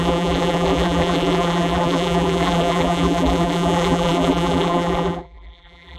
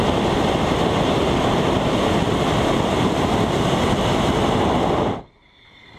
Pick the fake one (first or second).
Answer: first